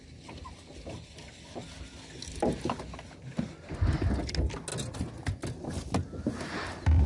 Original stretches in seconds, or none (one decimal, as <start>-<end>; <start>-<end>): 0.0-7.1